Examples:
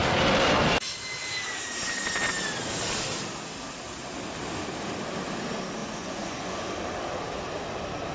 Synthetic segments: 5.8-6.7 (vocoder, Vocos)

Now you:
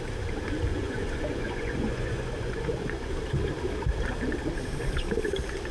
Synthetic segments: 0.7-3.1 (vocoder, Vocos)

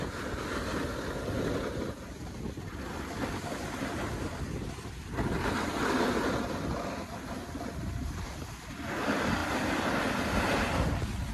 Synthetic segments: none

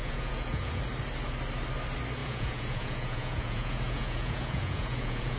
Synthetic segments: 0.0-0.8 (vocoder, Vocos); 2.2-5.4

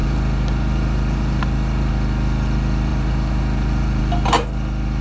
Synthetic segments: 0.0-1.9 (vocoder, BigVGAN v2); 2.9-4.0

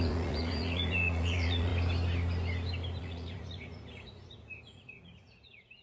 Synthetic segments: 0.0-1.7 (vocoder, Vocos); 3.0-5.8